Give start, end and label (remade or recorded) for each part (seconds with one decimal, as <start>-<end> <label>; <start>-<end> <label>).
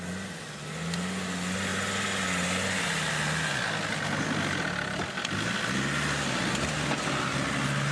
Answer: 0.0-7.9 recorded